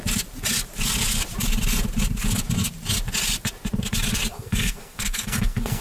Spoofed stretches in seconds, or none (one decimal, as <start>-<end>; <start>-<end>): 4.3-5.8